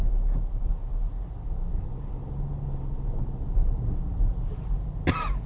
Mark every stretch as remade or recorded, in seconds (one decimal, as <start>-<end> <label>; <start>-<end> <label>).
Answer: 0.0-5.5 recorded

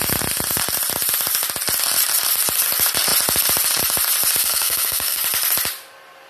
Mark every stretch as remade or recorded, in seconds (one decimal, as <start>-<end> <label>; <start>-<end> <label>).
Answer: 0.0-4.4 recorded; 4.4-5.2 remade; 5.2-6.3 recorded

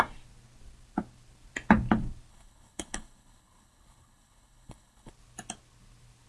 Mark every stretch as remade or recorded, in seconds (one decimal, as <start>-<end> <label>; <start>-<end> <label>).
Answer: 0.0-2.3 recorded; 2.3-5.1 remade; 5.1-6.3 recorded

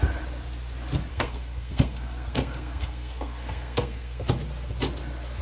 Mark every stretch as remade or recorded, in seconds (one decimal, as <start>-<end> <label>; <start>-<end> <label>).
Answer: 0.0-1.1 recorded; 1.1-4.3 remade; 4.3-5.4 recorded

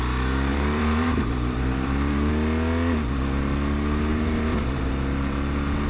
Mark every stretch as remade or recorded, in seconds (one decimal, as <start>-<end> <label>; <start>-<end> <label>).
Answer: 0.0-0.5 recorded; 0.5-2.3 remade; 2.3-4.1 recorded; 4.1-4.9 remade; 4.9-5.9 recorded

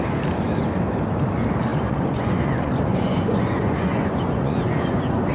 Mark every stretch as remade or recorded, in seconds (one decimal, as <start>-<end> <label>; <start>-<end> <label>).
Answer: 0.0-1.7 recorded; 1.7-5.3 remade

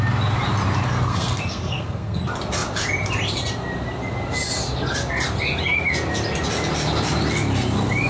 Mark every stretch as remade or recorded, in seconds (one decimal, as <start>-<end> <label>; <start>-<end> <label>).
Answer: 0.0-1.1 recorded; 1.1-2.2 remade; 2.2-8.1 recorded

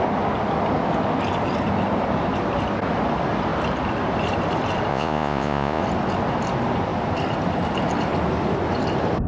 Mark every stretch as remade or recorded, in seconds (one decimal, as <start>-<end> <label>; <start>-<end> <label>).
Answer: 0.0-4.9 recorded; 4.9-5.8 remade; 5.8-9.3 recorded